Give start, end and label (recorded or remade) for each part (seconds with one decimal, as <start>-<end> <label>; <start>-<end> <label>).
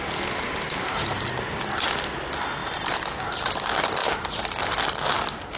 0.0-5.6 recorded